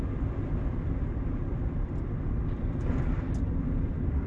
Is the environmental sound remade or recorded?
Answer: remade